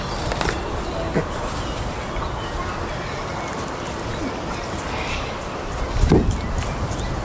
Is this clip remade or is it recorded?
recorded